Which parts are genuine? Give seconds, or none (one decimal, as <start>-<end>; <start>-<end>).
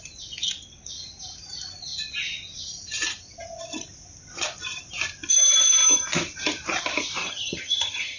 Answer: 0.0-7.2